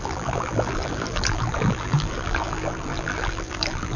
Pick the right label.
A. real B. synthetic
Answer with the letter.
B